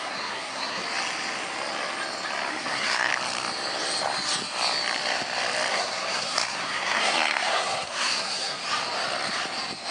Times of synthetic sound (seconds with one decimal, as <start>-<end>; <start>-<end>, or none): 0.0-0.8; 2.5-3.1; 5.7-8.6